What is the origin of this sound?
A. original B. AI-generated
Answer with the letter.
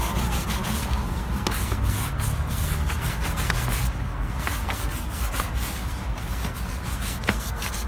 B